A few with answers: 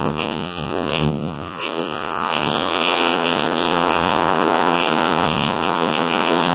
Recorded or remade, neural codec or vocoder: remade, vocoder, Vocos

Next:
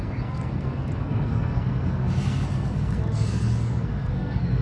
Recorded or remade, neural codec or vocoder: remade, codec, SNAC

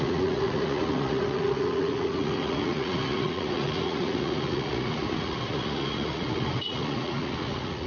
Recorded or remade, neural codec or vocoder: remade, vocoder, Vocos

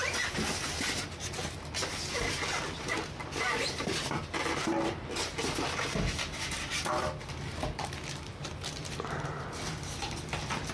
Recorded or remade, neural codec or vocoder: recorded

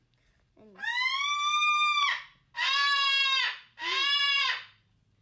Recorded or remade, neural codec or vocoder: recorded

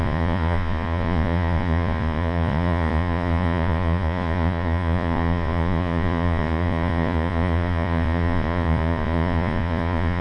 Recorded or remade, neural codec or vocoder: remade, vocoder, Vocos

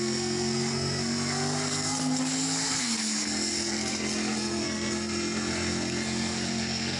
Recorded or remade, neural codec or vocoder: remade, codec, SNAC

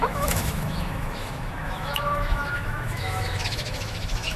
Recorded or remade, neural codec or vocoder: remade, autoencoder, DAC-VAE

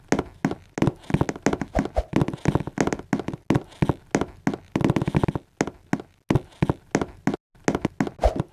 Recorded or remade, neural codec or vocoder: recorded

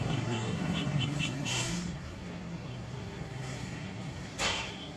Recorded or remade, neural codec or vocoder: remade, codec, SNAC